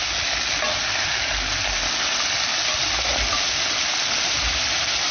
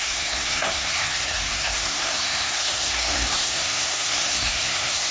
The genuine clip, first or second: first